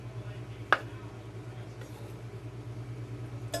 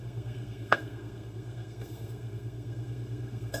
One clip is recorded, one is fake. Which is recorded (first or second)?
first